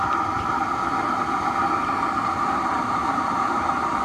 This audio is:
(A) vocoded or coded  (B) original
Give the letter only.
B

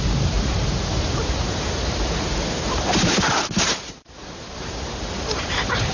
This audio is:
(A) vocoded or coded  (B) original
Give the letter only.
A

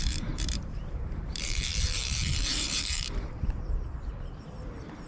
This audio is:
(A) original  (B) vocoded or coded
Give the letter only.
B